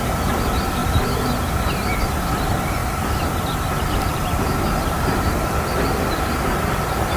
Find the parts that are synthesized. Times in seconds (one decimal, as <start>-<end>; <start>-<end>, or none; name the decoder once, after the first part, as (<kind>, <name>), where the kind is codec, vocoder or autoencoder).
0.0-0.8 (vocoder, BigVGAN v2); 1.7-7.2